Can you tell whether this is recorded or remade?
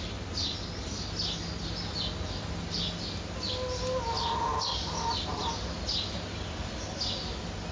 recorded